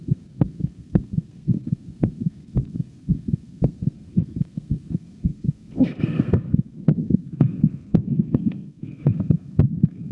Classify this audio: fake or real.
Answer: fake